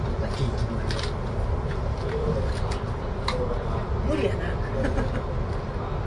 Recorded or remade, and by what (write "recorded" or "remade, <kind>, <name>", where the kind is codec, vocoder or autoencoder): recorded